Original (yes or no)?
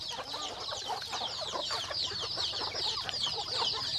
no